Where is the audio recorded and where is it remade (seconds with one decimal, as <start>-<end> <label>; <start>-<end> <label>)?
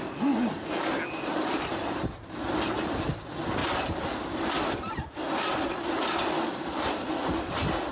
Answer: 0.0-1.3 recorded; 1.3-2.4 remade; 2.4-3.6 recorded; 3.6-7.1 remade; 7.1-7.9 recorded